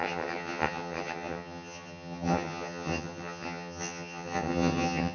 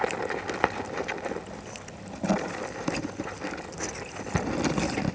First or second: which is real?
second